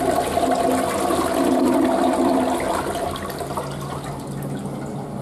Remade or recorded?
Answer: recorded